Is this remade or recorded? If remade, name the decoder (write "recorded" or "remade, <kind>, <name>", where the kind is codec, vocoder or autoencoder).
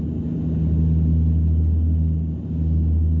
recorded